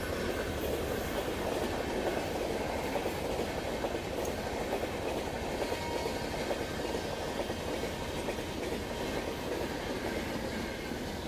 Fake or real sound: real